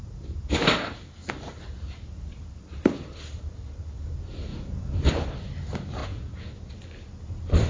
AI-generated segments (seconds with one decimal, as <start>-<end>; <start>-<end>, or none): 4.5-5.1; 6.0-6.7